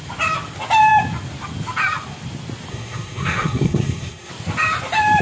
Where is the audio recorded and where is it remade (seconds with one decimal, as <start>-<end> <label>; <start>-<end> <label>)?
0.0-2.7 recorded; 2.7-4.3 remade; 4.3-5.2 recorded